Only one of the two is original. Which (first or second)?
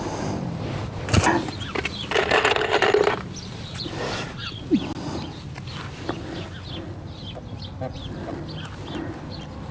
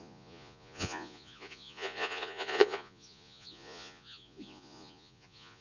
first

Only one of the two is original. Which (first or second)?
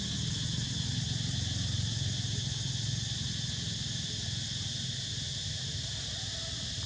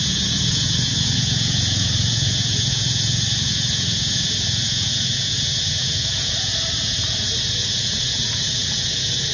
first